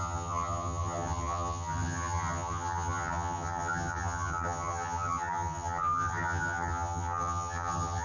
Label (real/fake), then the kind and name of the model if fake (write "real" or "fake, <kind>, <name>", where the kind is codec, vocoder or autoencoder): fake, vocoder, HiFi-GAN